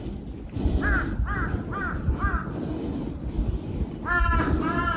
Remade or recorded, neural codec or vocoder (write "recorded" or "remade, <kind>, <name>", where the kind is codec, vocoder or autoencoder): recorded